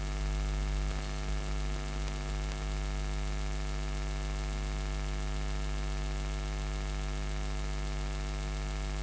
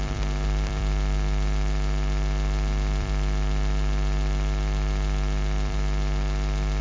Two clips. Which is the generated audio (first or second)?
second